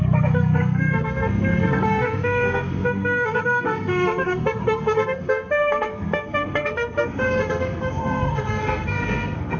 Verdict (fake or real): fake